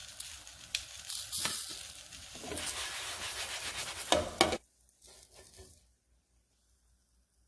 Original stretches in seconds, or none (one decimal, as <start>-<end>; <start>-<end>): 0.0-7.5